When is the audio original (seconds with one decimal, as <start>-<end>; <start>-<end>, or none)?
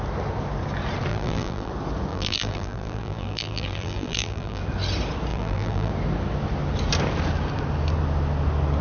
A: 0.0-1.1; 1.7-2.1; 4.6-5.3; 5.9-8.8